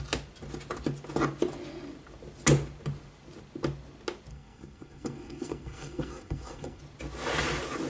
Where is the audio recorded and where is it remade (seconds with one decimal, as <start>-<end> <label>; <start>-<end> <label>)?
0.0-4.3 recorded; 4.3-6.8 remade; 6.8-7.9 recorded